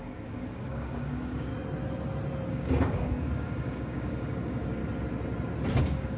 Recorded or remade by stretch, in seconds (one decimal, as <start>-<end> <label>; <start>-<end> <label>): 0.0-1.5 remade; 1.5-2.5 recorded; 2.5-4.8 remade; 4.8-5.8 recorded; 5.8-6.2 remade

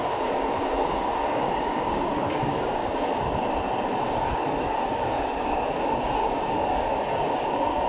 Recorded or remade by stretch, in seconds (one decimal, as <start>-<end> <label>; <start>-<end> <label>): 0.0-2.8 remade; 2.8-4.6 recorded; 4.6-7.9 remade

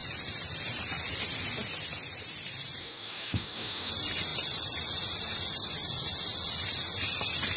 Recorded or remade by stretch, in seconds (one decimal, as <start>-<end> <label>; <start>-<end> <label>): 0.0-2.8 recorded; 2.8-3.9 remade; 3.9-7.6 recorded

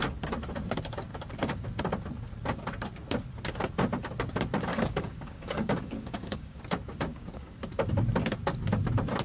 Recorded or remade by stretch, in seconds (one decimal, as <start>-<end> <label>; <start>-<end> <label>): 0.0-4.7 recorded; 4.7-6.6 remade; 6.6-7.1 recorded; 7.1-7.6 remade; 7.6-9.2 recorded